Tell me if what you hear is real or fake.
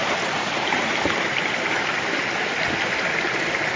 real